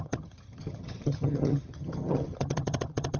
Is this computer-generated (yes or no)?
yes